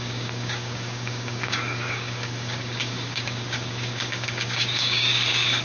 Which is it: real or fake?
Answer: fake